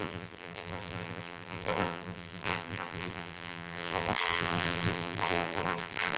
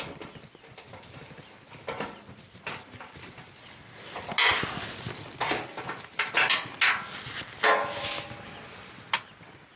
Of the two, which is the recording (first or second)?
second